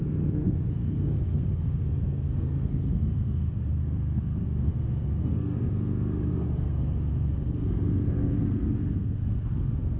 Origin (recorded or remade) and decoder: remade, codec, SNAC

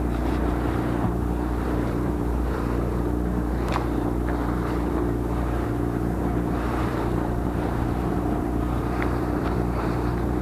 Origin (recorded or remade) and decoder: remade, vocoder, BigVGAN v2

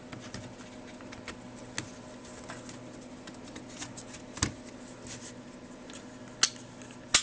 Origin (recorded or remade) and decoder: recorded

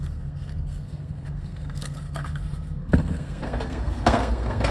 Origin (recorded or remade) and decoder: remade, codec, SNAC